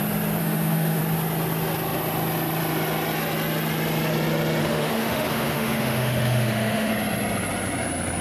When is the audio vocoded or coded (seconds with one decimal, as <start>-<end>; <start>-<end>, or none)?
0.4-1.0; 4.6-6.9